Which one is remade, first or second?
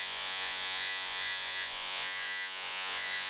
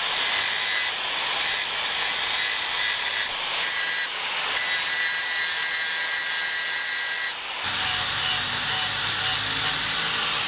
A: first